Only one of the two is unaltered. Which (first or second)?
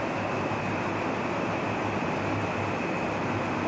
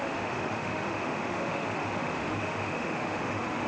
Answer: first